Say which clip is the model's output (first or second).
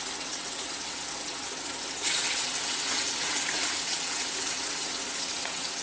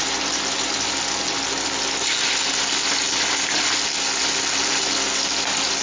first